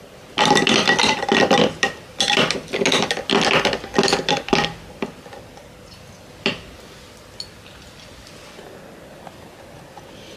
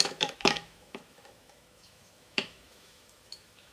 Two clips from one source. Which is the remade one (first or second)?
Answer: second